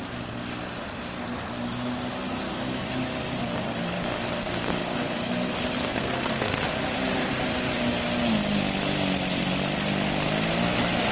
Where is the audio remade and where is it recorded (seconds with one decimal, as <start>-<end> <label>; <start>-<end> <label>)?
0.0-5.9 recorded; 5.9-6.6 remade; 6.6-11.1 recorded

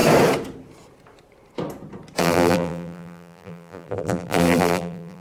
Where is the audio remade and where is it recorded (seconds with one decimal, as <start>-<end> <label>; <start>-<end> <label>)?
0.0-2.2 recorded; 2.2-5.2 remade

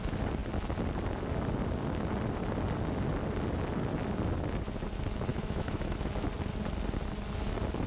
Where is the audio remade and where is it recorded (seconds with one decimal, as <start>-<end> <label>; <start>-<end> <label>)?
0.0-5.3 recorded; 5.3-6.1 remade; 6.1-7.9 recorded

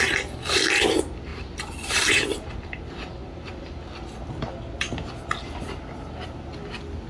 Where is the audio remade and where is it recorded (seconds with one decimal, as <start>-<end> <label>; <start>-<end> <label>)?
0.0-1.3 recorded; 1.3-2.5 remade; 2.5-7.1 recorded

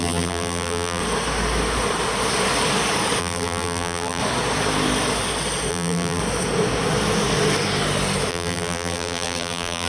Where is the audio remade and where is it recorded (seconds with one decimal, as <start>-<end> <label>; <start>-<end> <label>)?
0.0-1.0 remade; 1.0-3.2 recorded; 3.2-4.2 remade; 4.2-5.7 recorded; 5.7-6.2 remade; 6.2-8.3 recorded; 8.3-9.9 remade

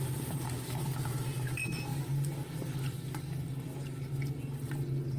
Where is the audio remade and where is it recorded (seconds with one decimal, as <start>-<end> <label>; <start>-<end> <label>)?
0.0-5.2 recorded

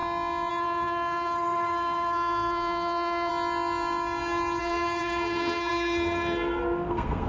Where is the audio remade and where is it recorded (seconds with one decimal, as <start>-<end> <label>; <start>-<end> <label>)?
0.0-0.5 recorded; 0.5-3.3 remade; 3.3-4.6 recorded; 4.6-7.3 remade